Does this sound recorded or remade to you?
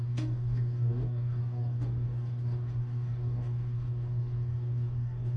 remade